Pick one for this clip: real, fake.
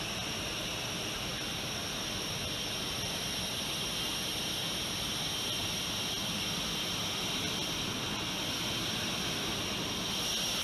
real